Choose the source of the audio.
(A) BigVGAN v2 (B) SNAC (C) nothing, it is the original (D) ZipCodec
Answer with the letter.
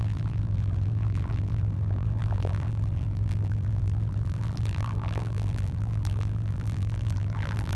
A